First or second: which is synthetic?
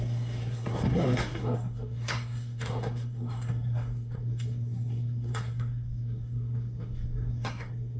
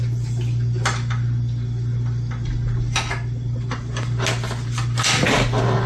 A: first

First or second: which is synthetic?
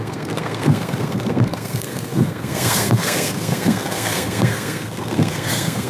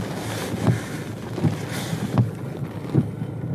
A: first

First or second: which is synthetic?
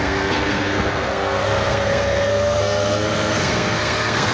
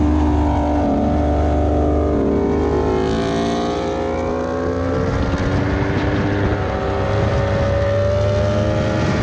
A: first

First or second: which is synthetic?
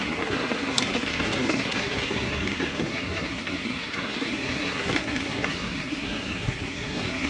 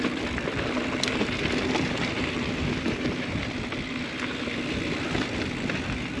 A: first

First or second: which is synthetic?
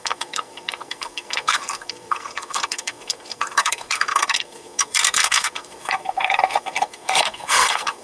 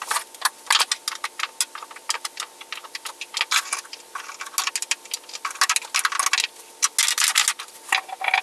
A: first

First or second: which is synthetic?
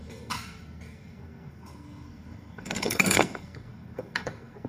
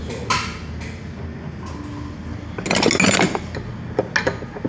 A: first